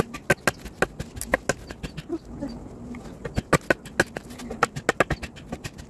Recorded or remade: recorded